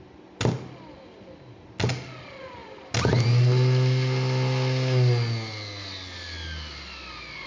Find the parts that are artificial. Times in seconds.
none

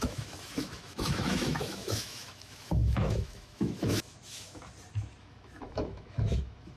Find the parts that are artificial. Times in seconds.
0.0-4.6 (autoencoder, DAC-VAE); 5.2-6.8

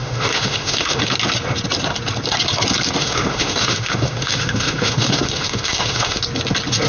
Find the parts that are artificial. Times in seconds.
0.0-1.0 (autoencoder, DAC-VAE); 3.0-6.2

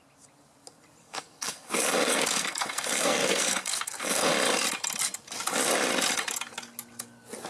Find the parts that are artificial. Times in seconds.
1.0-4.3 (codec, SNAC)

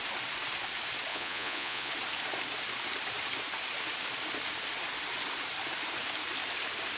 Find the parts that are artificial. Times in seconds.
1.1-1.9 (vocoder, Vocos)

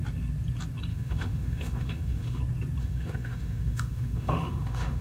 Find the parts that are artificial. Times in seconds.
0.9-2.4 (autoencoder, DAC-VAE); 2.8-5.0

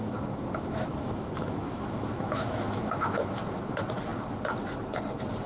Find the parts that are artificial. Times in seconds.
0.0-3.3 (autoencoder, DAC-VAE)

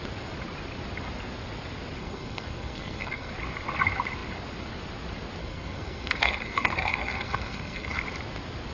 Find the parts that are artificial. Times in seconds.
2.0-3.3 (codec, SNAC); 5.4-8.0